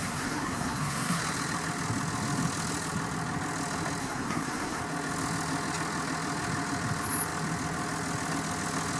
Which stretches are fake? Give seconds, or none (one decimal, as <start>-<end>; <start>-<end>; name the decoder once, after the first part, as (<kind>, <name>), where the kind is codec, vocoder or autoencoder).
0.0-1.2 (codec, SNAC); 4.0-4.8